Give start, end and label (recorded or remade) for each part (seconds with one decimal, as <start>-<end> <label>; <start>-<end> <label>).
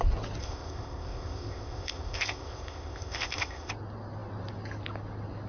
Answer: 0.0-0.4 recorded; 0.4-3.7 remade; 3.7-5.5 recorded